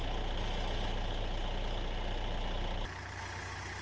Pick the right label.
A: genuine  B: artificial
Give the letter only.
A